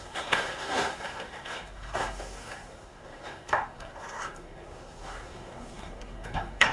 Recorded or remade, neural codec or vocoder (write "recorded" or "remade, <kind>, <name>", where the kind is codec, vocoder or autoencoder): remade, codec, SNAC